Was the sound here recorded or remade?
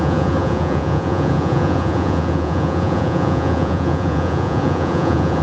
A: remade